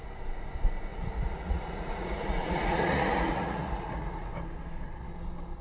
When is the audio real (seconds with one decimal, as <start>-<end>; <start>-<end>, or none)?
0.0-0.9; 4.3-5.6